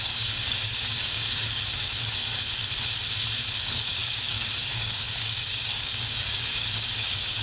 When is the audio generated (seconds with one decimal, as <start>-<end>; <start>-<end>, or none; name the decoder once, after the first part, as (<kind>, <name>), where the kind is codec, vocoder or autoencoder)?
0.0-2.6 (codec, DAC); 3.6-7.4